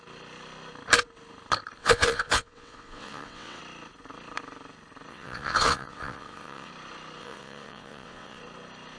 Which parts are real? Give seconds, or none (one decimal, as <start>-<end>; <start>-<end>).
0.0-1.8; 3.6-5.1; 6.7-7.2; 8.4-9.0